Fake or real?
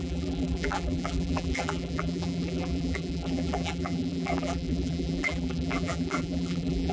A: fake